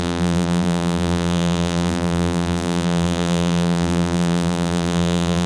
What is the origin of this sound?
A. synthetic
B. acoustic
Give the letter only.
A